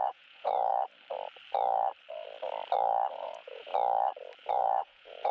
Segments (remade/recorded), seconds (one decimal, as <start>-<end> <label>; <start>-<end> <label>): 0.0-0.7 remade; 0.7-3.1 recorded; 3.1-3.7 remade; 3.7-4.5 recorded; 4.5-5.3 remade